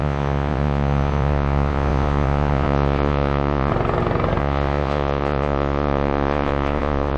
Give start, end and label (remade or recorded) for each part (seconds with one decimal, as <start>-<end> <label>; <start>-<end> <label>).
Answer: 0.0-3.7 remade; 3.7-4.4 recorded; 4.4-7.2 remade